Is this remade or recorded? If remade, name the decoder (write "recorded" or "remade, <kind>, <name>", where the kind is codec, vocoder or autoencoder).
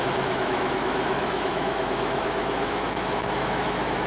remade, autoencoder, DAC-VAE